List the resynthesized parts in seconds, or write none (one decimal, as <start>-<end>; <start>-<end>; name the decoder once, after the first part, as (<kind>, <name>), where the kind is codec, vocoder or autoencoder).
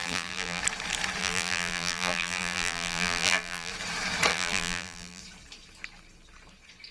0.0-0.6 (vocoder, BigVGAN v2); 1.2-3.7; 4.3-5.2